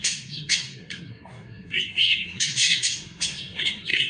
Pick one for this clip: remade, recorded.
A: remade